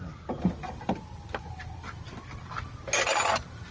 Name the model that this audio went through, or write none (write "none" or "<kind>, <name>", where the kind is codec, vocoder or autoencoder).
none